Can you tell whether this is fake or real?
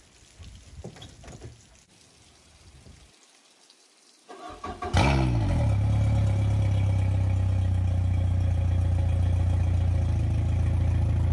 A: real